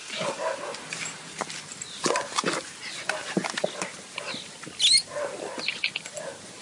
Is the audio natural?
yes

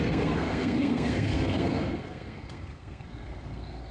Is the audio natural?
no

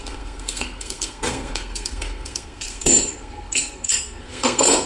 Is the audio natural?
no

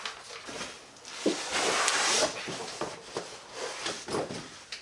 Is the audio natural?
yes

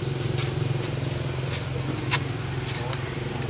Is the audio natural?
yes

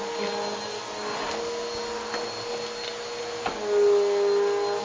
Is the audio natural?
yes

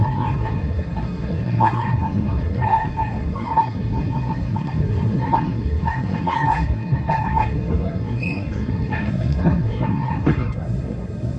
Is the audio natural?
no